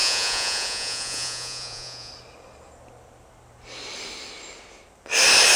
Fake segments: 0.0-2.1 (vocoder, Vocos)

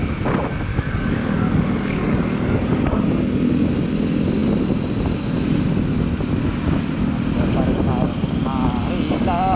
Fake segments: 0.7-3.0 (codec, DAC)

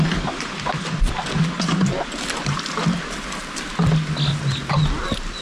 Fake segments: none

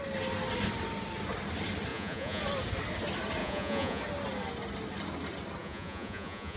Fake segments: 1.9-2.4 (vocoder, Vocos); 3.4-4.0; 5.6-6.6

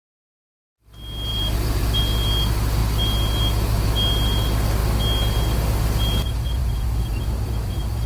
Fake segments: 1.3-1.8 (vocoder, BigVGAN v2); 6.6-8.1

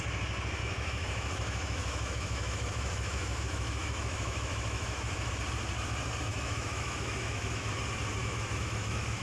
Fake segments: 0.6-5.3 (autoencoder, DAC-VAE); 6.3-7.7; 8.2-9.2

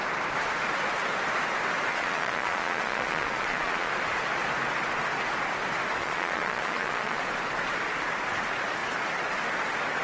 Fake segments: 1.9-3.9 (vocoder, Vocos); 6.0-7.2

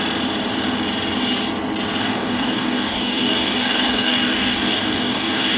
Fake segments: 2.0-5.6 (codec, DAC)